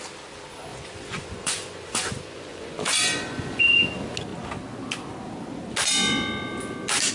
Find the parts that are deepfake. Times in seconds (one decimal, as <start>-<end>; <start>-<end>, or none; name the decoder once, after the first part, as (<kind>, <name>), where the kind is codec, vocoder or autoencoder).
0.7-3.9 (vocoder, Vocos)